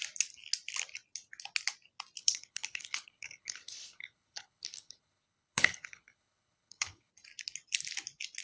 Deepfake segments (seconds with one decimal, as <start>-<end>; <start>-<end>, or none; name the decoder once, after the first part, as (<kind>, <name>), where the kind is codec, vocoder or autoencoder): 2.2-7.1 (codec, HILCodec)